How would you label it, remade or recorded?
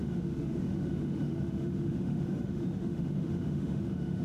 remade